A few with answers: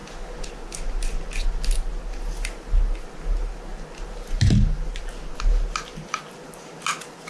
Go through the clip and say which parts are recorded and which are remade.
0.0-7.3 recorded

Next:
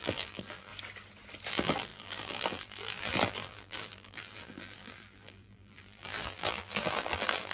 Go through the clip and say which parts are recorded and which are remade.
0.0-0.7 remade; 0.7-1.5 recorded; 1.5-7.5 remade

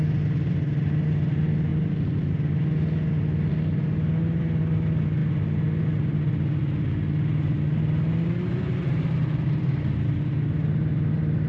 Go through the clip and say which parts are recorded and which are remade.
0.0-6.6 recorded; 6.6-7.5 remade; 7.5-8.5 recorded; 8.5-10.1 remade; 10.1-11.5 recorded

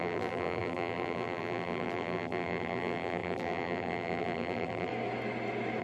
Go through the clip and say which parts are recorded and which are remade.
0.0-4.9 remade; 4.9-5.8 recorded

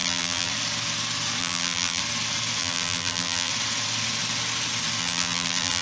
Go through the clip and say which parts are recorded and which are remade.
0.0-0.5 remade; 0.5-1.4 recorded; 1.4-2.0 remade; 2.0-2.6 recorded; 2.6-3.5 remade; 3.5-5.0 recorded; 5.0-5.8 remade

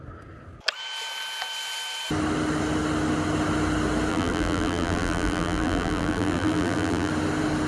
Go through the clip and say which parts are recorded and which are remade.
0.0-4.1 recorded; 4.1-7.1 remade; 7.1-7.7 recorded

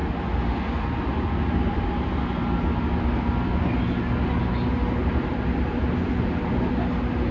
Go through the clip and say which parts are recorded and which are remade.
0.0-5.0 recorded; 5.0-5.8 remade; 5.8-7.3 recorded

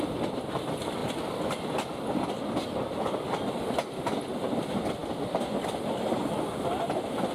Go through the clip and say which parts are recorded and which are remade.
0.0-1.0 recorded; 1.0-1.5 remade; 1.5-7.3 recorded